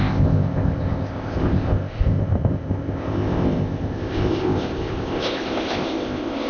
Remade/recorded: remade